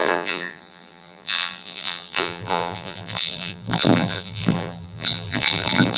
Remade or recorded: remade